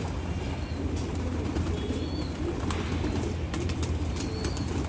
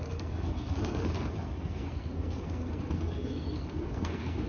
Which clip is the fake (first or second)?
second